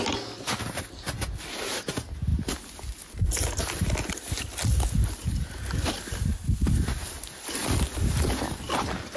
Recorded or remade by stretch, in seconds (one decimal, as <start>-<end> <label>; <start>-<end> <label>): 0.0-9.2 recorded